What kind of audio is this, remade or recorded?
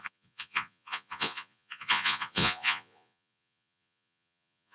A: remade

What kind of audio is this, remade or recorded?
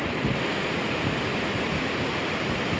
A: recorded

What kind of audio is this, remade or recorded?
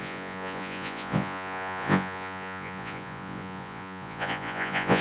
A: remade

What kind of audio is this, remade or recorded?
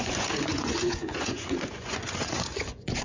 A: remade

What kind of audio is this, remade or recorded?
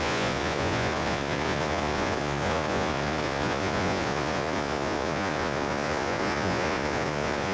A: remade